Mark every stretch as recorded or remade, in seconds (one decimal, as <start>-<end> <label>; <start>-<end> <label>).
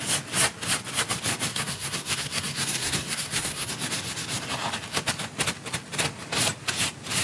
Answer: 0.0-1.5 recorded; 1.5-3.7 remade; 3.7-7.2 recorded